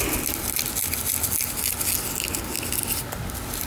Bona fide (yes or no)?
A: yes